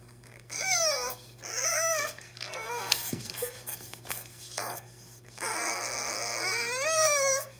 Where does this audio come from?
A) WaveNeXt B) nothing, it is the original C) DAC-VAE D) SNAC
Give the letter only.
D